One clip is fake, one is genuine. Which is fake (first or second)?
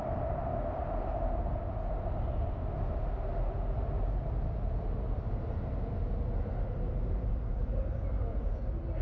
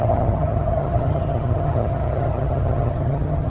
second